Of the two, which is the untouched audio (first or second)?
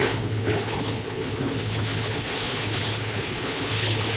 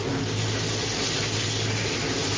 second